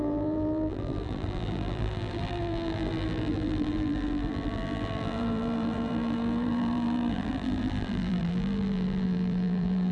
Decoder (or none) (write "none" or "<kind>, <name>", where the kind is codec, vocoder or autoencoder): vocoder, BigVGAN v2